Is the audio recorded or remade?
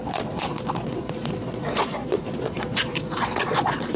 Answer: remade